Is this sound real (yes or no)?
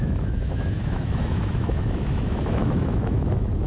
no